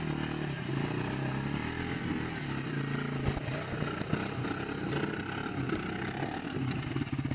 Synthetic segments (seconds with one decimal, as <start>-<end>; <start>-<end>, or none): none